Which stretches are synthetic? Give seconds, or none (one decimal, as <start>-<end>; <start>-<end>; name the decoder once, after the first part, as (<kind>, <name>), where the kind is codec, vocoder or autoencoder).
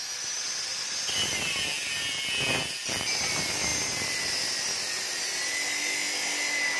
none